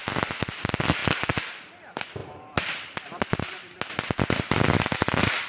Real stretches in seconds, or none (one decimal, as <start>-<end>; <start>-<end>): 0.0-5.5